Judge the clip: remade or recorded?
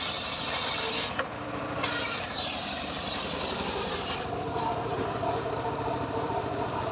remade